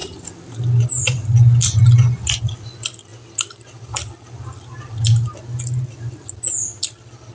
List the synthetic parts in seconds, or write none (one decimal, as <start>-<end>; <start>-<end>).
0.0-0.6; 3.1-4.9